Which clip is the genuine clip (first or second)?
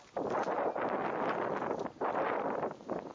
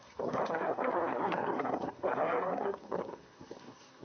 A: first